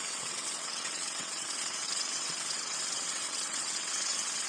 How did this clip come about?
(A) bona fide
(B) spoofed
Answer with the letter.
B